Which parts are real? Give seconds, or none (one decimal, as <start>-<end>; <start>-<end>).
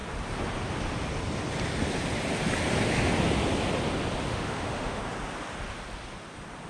0.0-4.3; 5.0-6.7